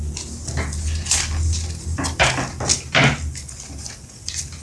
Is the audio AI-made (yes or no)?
no